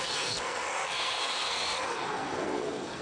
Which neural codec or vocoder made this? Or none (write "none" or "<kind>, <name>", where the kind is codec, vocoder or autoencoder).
codec, SNAC